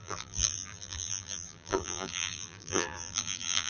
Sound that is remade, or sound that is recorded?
remade